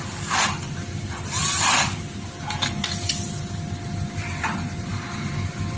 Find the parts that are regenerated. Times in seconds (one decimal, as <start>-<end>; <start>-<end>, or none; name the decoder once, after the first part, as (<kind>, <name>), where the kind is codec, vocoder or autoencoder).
none